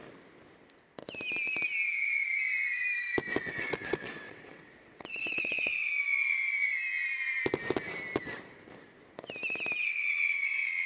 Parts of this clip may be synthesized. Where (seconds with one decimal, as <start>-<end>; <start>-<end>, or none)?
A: 3.5-5.9; 9.8-10.9